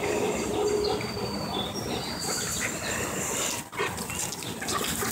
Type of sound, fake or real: real